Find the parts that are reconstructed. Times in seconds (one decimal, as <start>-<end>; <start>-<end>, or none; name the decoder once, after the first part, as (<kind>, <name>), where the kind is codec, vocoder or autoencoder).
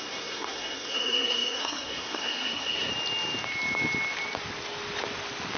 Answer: 0.0-2.9 (codec, SNAC)